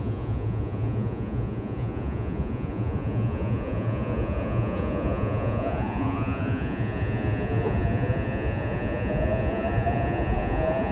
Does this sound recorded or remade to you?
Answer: remade